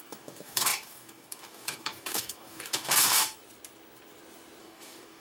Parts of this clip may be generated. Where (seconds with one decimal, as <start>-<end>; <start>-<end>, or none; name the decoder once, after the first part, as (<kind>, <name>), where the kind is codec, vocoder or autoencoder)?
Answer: 0.0-3.4 (codec, DAC); 4.6-5.2